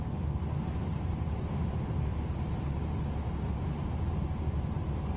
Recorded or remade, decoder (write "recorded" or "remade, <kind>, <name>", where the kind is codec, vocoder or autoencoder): remade, vocoder, BigVGAN v2